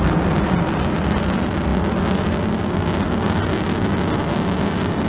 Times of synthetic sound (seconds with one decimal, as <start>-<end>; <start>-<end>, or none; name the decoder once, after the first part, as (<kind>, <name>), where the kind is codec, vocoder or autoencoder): none